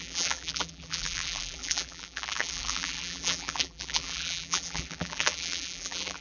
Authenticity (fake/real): fake